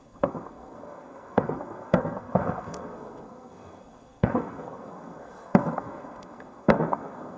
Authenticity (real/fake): fake